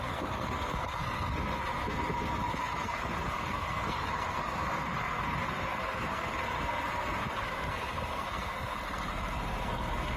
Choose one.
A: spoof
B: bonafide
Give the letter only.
A